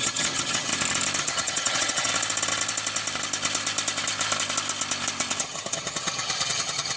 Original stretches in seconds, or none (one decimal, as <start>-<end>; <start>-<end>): 0.7-1.2; 2.1-5.4